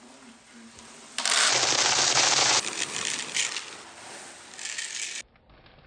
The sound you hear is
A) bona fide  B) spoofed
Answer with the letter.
A